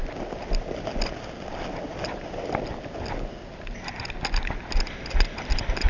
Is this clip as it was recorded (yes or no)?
yes